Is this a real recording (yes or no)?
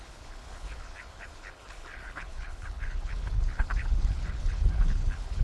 no